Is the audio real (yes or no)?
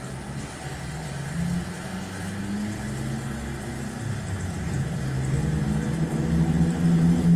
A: yes